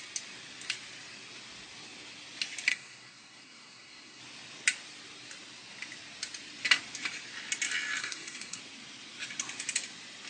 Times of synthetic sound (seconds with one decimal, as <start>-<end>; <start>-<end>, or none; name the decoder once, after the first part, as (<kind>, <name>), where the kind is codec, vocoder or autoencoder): 2.7-4.2 (codec, SNAC); 8.0-8.6